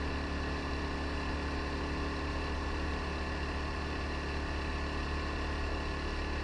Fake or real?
real